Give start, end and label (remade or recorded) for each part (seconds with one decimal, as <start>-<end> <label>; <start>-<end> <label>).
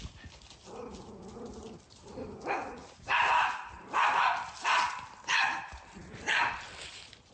0.0-7.3 recorded